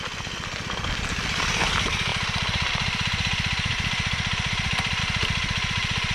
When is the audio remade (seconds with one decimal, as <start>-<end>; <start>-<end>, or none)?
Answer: 2.1-5.0

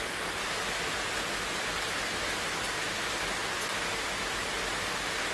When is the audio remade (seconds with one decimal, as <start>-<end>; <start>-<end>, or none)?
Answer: none